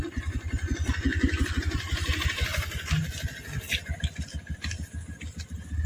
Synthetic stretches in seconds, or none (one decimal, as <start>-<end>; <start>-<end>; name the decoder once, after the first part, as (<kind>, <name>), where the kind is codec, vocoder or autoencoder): none